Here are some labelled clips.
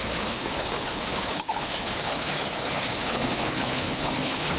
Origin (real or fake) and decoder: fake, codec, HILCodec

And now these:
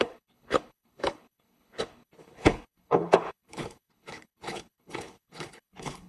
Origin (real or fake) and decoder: fake, codec, HILCodec